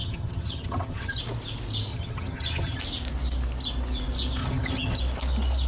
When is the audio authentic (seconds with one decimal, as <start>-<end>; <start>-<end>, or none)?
1.2-1.9; 2.8-4.4; 5.0-5.7